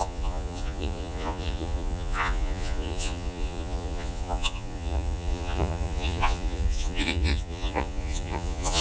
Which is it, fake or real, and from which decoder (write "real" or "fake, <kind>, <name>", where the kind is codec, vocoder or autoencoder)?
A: fake, vocoder, Vocos